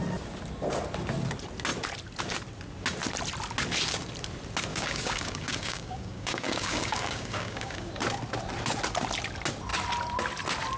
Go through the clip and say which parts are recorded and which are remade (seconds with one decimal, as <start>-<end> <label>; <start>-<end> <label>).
0.0-4.7 recorded; 4.7-7.9 remade; 7.9-10.8 recorded